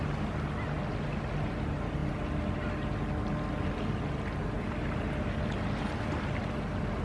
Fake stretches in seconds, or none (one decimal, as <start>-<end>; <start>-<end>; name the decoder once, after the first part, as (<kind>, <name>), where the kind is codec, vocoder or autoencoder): none